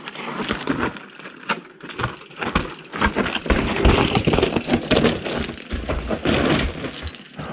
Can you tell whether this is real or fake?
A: real